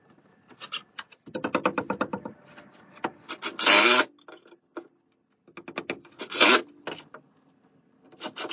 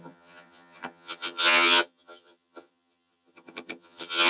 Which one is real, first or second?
first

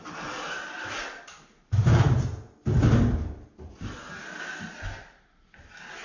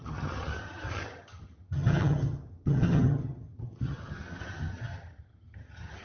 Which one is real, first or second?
first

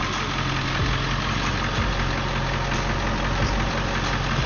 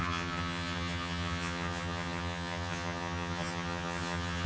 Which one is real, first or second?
first